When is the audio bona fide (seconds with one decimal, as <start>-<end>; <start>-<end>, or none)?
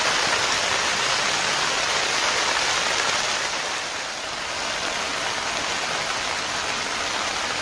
0.0-7.6